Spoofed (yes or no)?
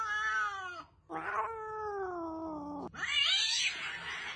no